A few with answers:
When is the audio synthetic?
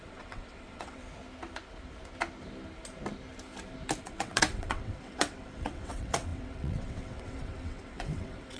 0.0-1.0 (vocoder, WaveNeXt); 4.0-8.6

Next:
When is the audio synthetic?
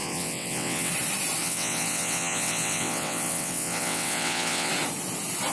0.0-0.9 (vocoder, WaveNeXt); 1.4-4.7